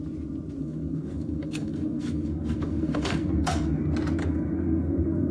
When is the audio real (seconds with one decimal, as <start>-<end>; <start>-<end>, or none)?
0.0-0.6; 3.8-4.2